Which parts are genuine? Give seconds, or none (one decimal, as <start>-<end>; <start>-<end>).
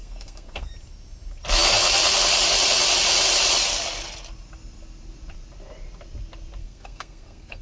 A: 0.7-6.6